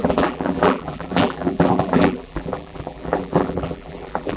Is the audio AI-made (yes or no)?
yes